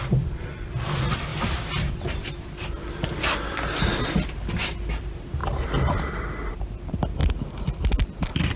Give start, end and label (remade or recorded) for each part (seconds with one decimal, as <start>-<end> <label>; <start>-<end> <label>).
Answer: 0.0-5.4 remade; 5.4-6.5 recorded; 6.5-7.2 remade; 7.2-8.6 recorded